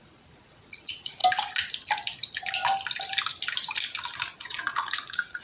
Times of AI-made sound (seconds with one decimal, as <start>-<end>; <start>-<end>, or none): 0.0-1.2; 4.4-5.4